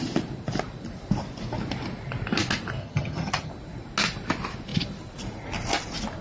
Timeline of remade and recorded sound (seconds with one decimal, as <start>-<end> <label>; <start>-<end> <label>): 0.0-2.8 recorded; 2.8-3.5 remade; 3.5-6.2 recorded

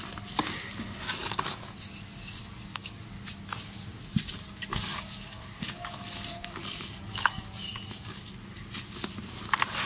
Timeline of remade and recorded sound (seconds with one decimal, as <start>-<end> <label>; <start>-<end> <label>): 0.0-2.4 recorded; 2.4-3.0 remade; 3.0-4.7 recorded; 4.7-8.3 remade; 8.3-9.9 recorded

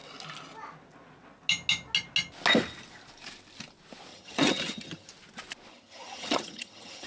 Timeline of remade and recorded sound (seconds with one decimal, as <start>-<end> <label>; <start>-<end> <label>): 0.0-4.1 recorded; 4.1-5.1 remade; 5.1-5.7 recorded; 5.7-7.1 remade

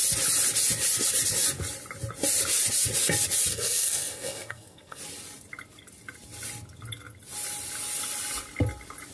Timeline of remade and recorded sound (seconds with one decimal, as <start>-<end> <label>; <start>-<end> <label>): 0.0-3.5 recorded; 3.5-5.0 remade; 5.0-9.1 recorded

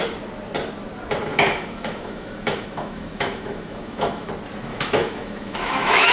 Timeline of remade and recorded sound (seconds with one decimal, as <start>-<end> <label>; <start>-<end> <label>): 0.0-1.3 recorded; 1.3-4.3 remade; 4.3-4.7 recorded; 4.7-6.1 remade

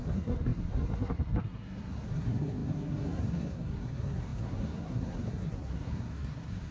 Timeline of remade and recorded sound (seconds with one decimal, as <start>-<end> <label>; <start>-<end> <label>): 0.0-6.7 remade

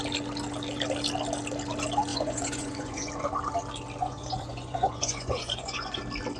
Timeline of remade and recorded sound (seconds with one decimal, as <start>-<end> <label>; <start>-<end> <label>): 0.0-2.1 recorded; 2.1-3.1 remade; 3.1-4.0 recorded; 4.0-6.0 remade; 6.0-6.4 recorded

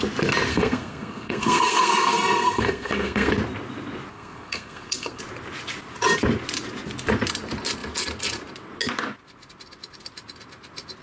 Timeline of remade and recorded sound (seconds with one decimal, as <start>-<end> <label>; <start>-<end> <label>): 0.0-0.5 recorded; 0.5-3.3 remade; 3.3-4.1 recorded; 4.1-5.2 remade; 5.2-11.0 recorded